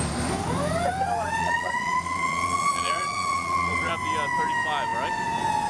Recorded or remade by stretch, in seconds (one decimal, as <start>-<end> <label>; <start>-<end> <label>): 0.0-1.4 recorded; 1.4-3.9 remade; 3.9-5.7 recorded